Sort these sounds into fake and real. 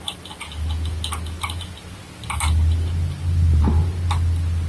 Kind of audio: real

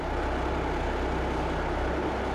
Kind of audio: real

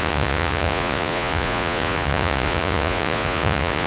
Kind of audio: fake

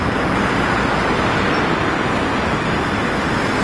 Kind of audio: real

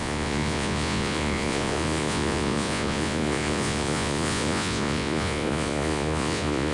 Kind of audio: fake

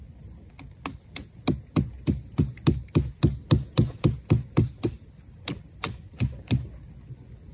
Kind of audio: real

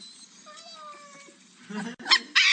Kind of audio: real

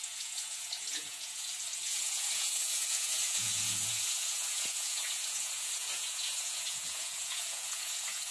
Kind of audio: fake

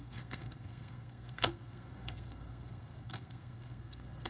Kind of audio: fake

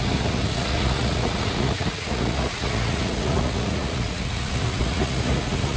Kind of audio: fake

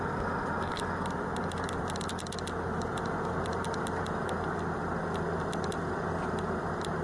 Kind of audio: real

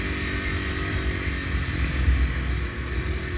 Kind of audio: real